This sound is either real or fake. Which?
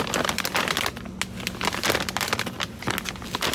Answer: real